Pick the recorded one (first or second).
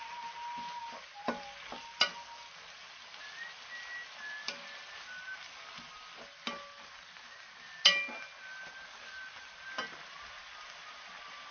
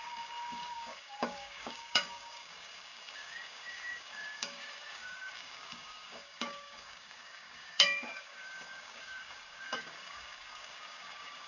first